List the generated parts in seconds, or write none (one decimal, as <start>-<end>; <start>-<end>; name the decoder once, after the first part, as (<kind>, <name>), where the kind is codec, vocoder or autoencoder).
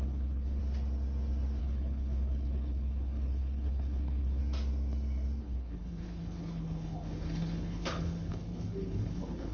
0.0-0.6 (codec, HILCodec); 1.6-4.4; 5.4-9.5